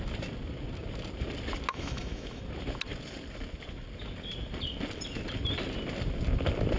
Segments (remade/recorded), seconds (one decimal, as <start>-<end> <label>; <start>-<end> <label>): 0.0-1.7 recorded; 1.7-2.4 remade; 2.4-6.8 recorded